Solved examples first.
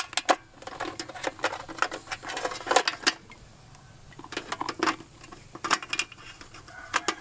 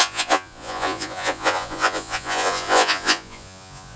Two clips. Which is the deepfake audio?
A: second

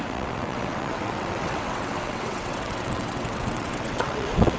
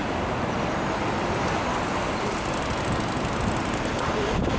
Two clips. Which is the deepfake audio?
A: first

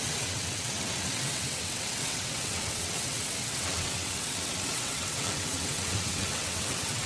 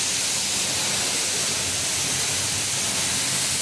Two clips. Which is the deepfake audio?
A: first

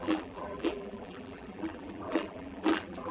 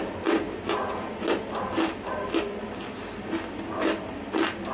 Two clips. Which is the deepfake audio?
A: first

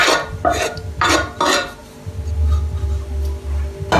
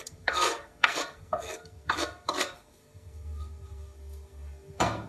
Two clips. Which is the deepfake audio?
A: second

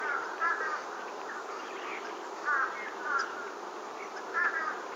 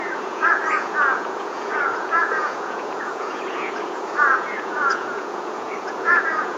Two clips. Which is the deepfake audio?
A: second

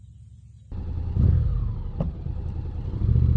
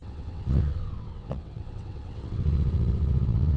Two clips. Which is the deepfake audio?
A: second